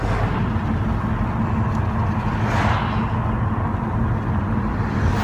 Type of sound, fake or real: real